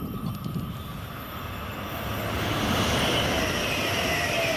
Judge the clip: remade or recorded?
recorded